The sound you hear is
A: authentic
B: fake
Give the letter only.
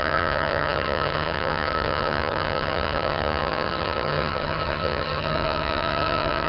B